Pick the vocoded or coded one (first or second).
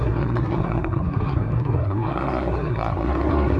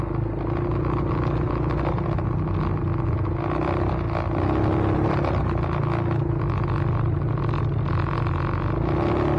first